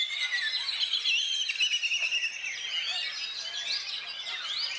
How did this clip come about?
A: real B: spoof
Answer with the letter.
A